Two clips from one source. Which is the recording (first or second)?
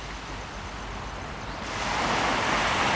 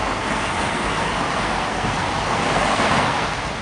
first